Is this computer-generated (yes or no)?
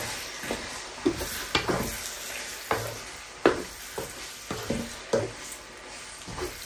no